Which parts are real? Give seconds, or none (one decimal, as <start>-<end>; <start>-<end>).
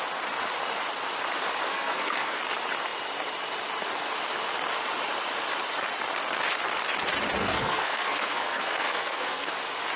0.0-1.7; 2.4-7.4; 9.5-10.0